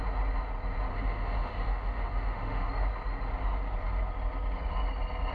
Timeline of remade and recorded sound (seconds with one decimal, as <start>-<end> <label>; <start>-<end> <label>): 0.0-0.9 recorded; 0.9-2.7 remade; 2.7-5.3 recorded